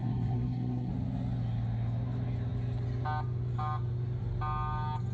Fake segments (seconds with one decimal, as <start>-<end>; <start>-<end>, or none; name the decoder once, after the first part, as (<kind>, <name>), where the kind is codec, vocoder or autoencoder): 0.0-0.9 (codec, SNAC)